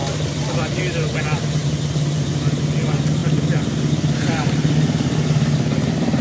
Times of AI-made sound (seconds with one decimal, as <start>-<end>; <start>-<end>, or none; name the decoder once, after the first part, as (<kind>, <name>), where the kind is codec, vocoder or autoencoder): none